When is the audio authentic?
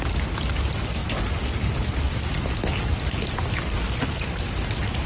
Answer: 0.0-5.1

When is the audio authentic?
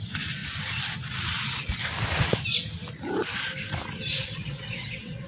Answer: 0.0-4.1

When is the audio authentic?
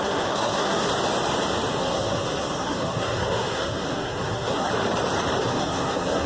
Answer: 0.9-1.7; 4.7-5.4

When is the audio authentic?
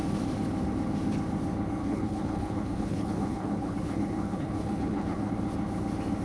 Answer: 0.0-1.8; 5.3-6.2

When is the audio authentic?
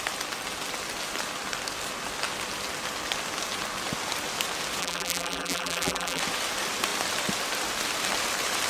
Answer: 0.0-4.8; 6.2-8.7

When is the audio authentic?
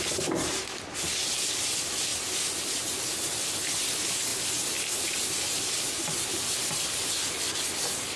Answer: 0.0-8.2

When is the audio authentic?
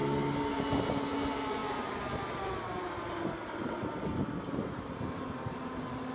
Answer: 0.0-6.1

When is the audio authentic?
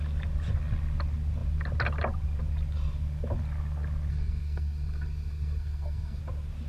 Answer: 0.0-4.1; 6.2-6.7